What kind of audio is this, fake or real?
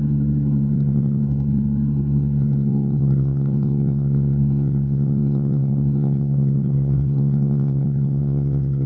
fake